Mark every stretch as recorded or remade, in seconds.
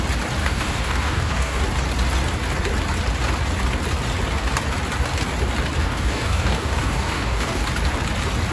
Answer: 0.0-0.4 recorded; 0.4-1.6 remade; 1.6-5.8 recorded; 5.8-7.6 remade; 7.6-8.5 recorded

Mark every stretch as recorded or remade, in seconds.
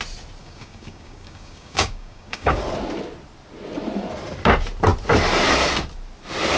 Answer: 0.0-0.4 recorded; 0.4-2.6 remade; 2.6-6.6 recorded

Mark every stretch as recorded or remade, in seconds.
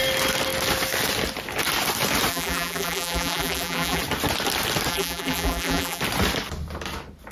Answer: 0.0-2.3 recorded; 2.3-4.0 remade; 4.0-4.9 recorded; 4.9-6.0 remade; 6.0-7.3 recorded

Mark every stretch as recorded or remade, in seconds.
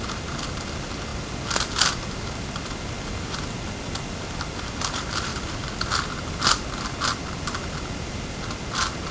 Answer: 0.0-9.1 recorded